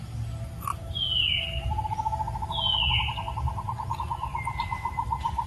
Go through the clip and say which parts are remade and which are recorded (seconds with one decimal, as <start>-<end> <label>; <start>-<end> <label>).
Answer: 0.0-5.5 recorded